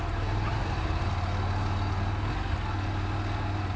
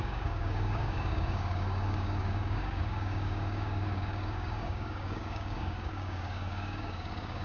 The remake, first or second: second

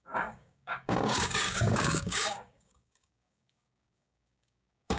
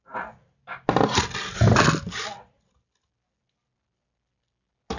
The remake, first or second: first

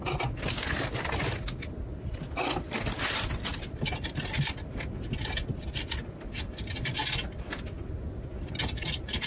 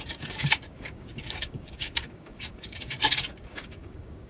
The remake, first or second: second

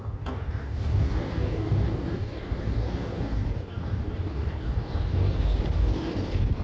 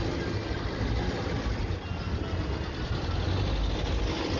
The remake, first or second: first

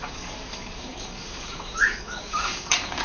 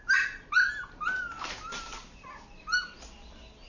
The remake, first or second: first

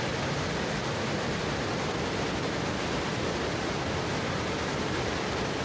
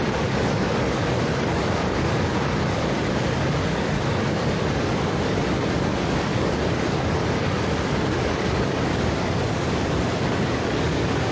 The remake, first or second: second